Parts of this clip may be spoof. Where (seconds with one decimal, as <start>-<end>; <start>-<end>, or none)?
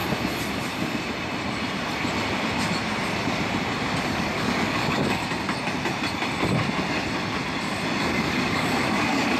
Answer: 4.0-5.2; 8.0-9.4